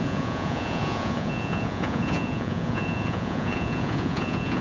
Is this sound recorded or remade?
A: remade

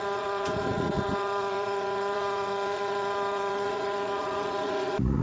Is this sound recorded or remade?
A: remade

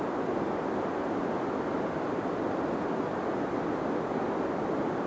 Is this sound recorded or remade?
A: recorded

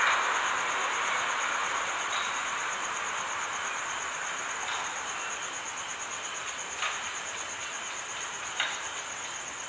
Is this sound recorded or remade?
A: recorded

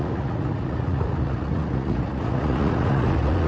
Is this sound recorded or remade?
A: remade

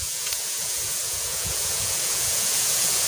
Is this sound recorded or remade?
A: remade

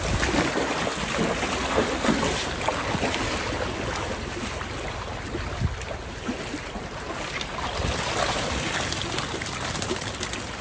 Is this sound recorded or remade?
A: recorded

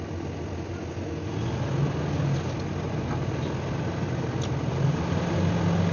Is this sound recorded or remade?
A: recorded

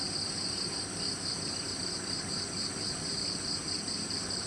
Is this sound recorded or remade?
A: recorded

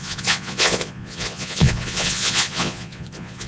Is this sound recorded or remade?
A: remade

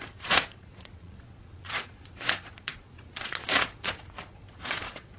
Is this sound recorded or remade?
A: remade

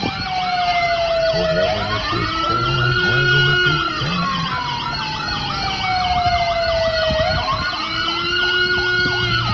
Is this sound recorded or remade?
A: recorded